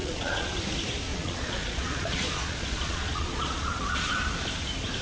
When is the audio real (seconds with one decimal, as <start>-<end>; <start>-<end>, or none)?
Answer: 0.5-1.1; 4.1-5.0